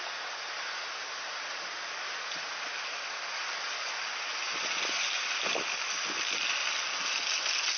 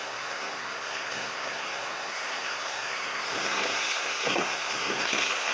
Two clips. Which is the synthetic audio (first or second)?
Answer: second